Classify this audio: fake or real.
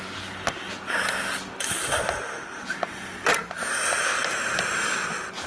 real